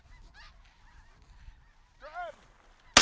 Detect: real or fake real